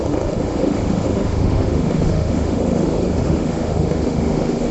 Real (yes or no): no